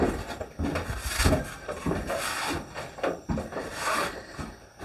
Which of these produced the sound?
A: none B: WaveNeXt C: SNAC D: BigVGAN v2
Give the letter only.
A